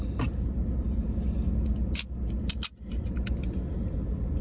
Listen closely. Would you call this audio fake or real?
real